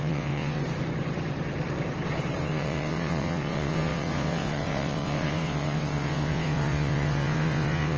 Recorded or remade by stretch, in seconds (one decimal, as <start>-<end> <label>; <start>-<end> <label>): 0.0-0.6 remade; 0.6-2.4 recorded; 2.4-8.0 remade